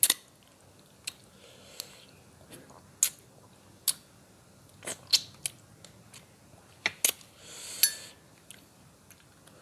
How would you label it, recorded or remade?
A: recorded